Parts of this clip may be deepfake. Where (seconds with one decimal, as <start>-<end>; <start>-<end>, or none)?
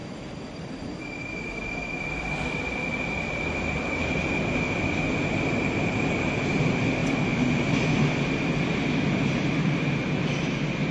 0.0-1.0